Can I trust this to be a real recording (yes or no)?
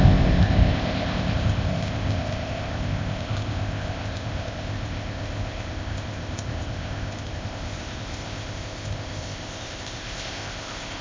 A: no